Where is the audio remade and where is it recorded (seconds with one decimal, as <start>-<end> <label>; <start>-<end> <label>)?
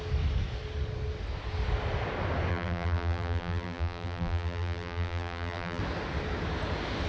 0.0-2.5 recorded; 2.5-5.8 remade; 5.8-7.1 recorded